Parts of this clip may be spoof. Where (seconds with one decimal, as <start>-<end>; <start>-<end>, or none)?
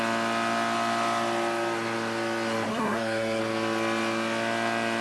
2.7-3.4